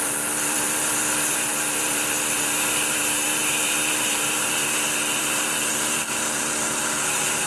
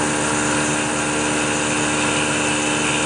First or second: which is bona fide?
second